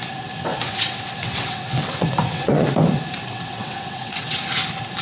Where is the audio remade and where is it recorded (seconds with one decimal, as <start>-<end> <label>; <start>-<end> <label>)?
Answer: 0.0-0.5 recorded; 0.5-2.7 remade; 2.7-3.2 recorded; 3.2-4.4 remade; 4.4-5.0 recorded